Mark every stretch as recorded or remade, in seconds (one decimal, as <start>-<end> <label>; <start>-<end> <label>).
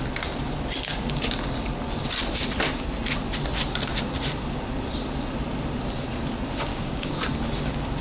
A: 0.0-6.7 recorded; 6.7-7.2 remade; 7.2-8.0 recorded